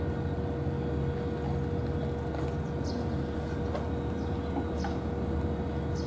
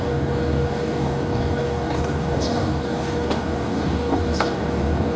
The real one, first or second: first